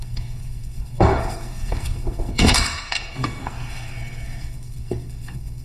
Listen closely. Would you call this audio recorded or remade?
remade